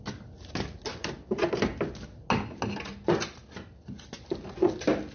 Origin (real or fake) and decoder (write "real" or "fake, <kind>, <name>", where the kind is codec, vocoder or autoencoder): real